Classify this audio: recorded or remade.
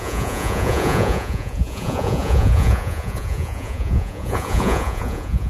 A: remade